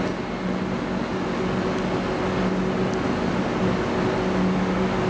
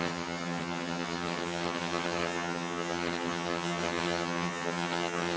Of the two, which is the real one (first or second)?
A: first